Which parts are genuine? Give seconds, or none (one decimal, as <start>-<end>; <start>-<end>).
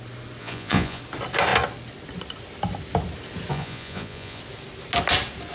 0.0-0.4; 1.0-3.5; 4.4-5.5